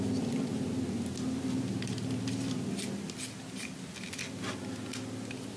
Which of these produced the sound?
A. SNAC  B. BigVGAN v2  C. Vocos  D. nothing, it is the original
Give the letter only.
D